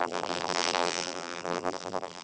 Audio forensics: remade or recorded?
remade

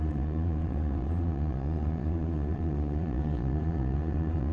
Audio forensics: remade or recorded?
remade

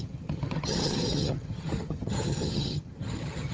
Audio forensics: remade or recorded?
remade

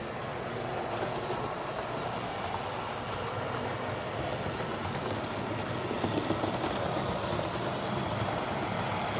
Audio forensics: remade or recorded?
recorded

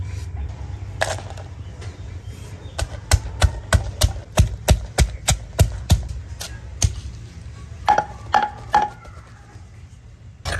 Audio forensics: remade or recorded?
recorded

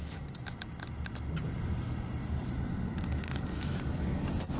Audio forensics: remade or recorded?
recorded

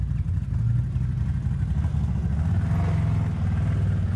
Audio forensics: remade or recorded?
recorded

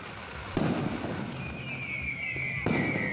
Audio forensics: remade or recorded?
recorded